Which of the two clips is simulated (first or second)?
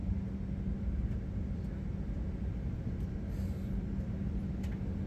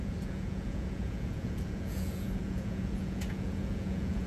second